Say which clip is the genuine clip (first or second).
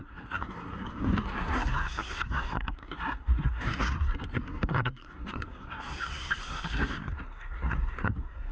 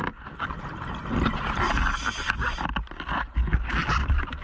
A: second